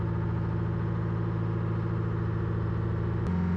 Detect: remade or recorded recorded